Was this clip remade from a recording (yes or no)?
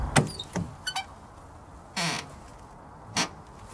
no